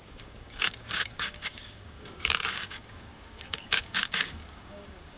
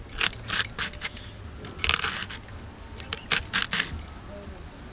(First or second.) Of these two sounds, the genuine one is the second